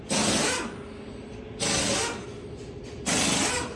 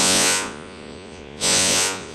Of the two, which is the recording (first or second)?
first